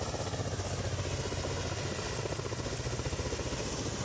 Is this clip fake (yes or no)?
no